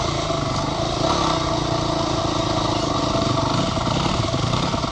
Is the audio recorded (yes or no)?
yes